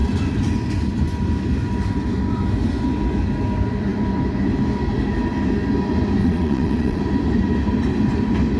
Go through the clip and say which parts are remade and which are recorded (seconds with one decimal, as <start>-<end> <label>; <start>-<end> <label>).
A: 0.0-6.2 recorded; 6.2-7.0 remade; 7.0-8.6 recorded